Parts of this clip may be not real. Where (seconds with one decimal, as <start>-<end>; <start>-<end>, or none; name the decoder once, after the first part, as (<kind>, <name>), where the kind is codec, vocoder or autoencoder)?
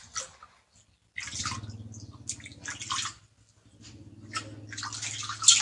none